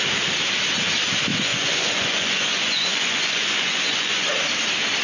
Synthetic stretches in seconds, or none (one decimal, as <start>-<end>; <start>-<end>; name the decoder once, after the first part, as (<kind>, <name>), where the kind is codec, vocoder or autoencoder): 1.3-4.3 (vocoder, Vocos)